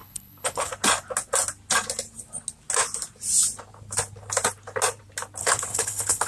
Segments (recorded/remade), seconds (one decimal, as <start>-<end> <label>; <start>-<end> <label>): 0.0-0.7 remade; 0.7-5.4 recorded; 5.4-6.3 remade